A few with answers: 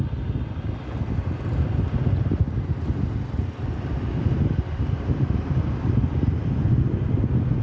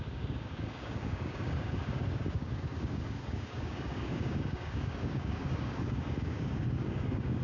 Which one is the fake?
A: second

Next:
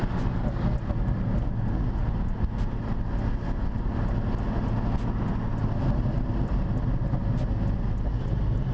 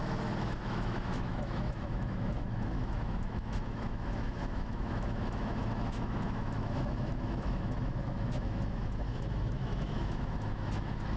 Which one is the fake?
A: second